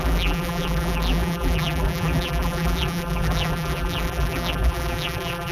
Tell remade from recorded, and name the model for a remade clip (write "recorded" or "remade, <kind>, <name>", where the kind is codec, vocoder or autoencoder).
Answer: remade, vocoder, BigVGAN v2